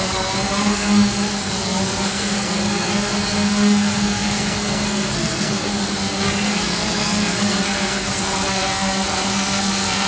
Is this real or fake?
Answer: fake